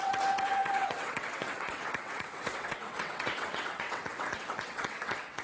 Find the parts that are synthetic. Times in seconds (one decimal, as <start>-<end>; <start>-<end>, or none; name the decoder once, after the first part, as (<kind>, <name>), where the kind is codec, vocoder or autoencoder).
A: 0.0-5.4 (vocoder, WaveNeXt)